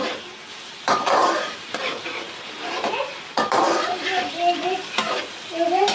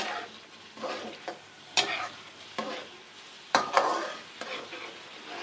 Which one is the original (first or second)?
second